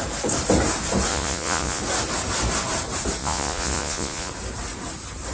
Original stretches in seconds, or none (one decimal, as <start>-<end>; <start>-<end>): 0.0-1.1; 1.8-3.2; 4.3-5.3